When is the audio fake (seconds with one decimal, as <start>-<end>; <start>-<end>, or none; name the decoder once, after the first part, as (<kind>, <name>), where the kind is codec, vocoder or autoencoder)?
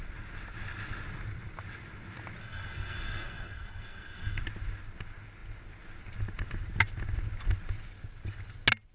2.4-4.4 (codec, SNAC)